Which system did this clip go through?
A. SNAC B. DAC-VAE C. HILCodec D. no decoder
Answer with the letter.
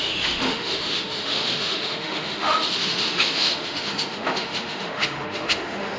B